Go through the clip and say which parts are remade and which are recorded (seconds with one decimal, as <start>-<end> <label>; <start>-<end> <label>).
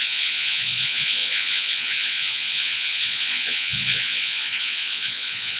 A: 0.0-5.6 remade